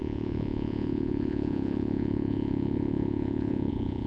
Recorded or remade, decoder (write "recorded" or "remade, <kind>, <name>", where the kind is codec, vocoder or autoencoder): remade, vocoder, Vocos